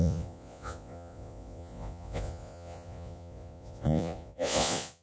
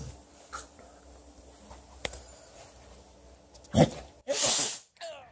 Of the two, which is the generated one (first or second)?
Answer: first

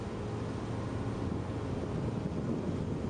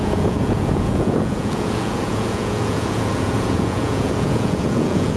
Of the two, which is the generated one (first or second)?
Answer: second